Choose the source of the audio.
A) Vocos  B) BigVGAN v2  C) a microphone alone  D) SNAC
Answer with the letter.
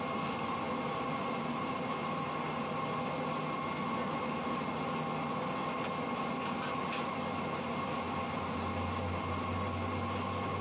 C